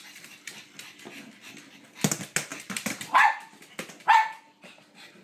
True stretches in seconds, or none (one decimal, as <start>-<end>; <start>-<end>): 0.0-2.5; 3.7-5.2